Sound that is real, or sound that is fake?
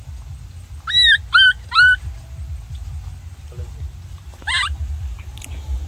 real